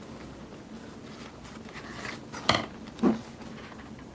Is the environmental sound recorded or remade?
recorded